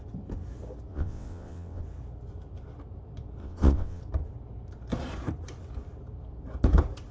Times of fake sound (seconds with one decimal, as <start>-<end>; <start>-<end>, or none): 0.9-1.8; 3.4-4.0